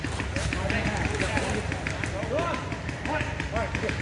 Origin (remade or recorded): recorded